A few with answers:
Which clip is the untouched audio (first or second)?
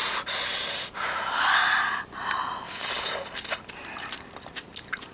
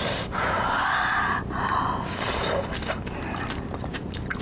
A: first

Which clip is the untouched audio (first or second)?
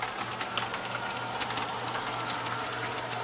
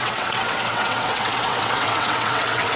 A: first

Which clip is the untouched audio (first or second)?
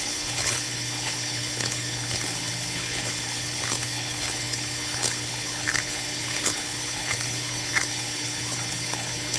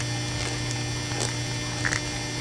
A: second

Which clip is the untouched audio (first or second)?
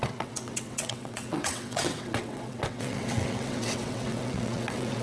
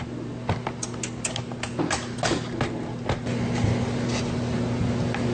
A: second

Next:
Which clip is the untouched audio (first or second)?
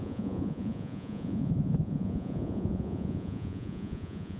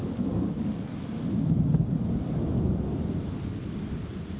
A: second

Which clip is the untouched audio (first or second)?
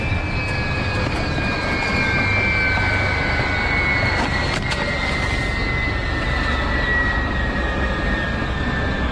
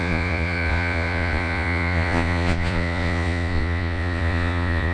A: first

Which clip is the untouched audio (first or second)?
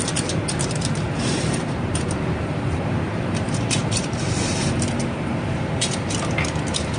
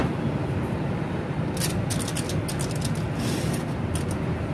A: second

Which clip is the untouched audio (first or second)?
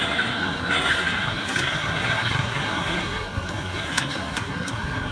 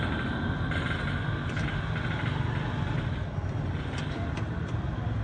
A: second